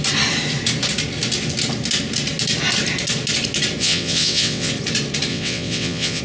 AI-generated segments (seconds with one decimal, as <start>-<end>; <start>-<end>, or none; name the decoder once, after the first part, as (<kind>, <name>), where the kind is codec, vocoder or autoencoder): 3.8-4.7 (vocoder, WaveNeXt); 5.3-6.2